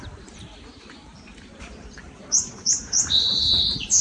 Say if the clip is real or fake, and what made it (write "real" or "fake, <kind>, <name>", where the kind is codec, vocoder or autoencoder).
fake, vocoder, BigVGAN v2